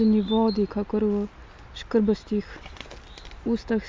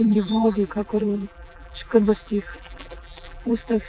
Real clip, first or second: first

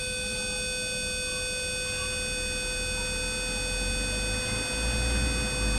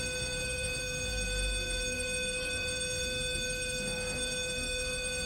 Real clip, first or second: first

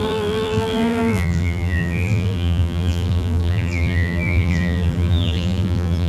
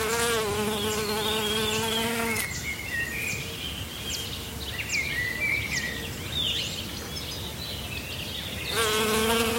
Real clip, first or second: second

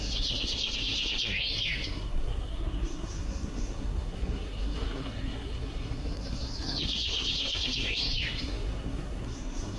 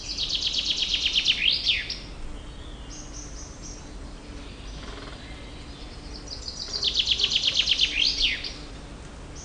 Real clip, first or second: second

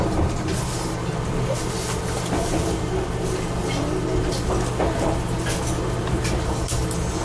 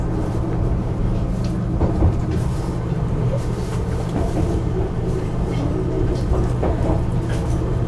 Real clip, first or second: first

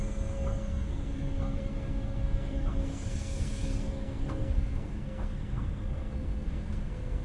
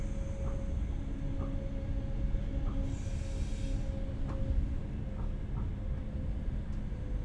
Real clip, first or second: second